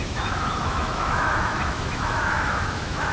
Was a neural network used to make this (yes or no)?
yes